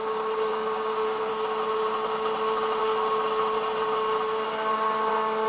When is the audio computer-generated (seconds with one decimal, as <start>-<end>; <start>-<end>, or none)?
0.5-1.3